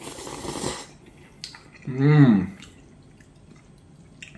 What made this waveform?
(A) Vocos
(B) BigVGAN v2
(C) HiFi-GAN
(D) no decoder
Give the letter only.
D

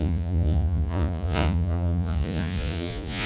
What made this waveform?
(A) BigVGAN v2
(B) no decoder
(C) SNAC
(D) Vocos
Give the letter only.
D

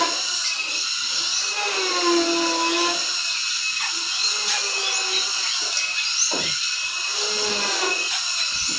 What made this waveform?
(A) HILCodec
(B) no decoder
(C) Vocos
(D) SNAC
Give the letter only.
B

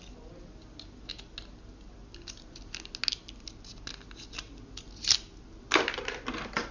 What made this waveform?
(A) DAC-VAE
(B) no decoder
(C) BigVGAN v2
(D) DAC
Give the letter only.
B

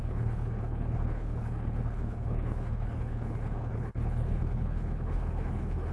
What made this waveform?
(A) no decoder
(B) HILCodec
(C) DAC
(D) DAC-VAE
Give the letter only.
B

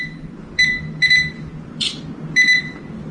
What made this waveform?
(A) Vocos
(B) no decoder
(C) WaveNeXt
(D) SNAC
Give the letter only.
B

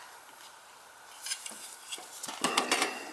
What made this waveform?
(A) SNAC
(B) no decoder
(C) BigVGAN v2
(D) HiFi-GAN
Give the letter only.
B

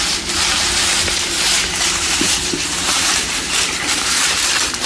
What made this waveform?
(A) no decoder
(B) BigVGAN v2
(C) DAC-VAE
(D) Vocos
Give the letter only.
B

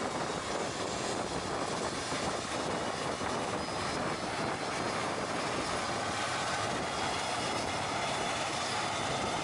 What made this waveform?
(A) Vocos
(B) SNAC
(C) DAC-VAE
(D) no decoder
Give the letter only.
D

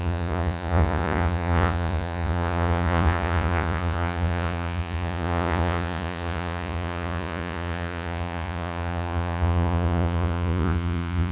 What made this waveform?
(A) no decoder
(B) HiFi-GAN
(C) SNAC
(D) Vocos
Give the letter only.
D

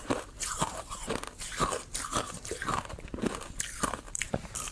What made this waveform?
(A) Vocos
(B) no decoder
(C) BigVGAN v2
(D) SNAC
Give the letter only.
C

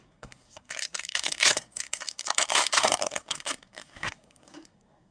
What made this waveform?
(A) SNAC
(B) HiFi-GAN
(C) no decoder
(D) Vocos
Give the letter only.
A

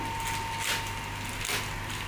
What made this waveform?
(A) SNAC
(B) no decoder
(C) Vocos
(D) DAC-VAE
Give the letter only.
B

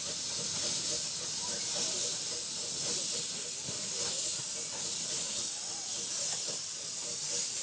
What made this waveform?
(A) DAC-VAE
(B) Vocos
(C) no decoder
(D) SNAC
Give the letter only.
C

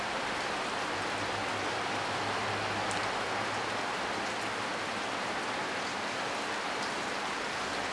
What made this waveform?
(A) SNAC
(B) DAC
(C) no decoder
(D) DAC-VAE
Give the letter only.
C